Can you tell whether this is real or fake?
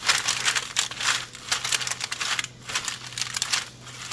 real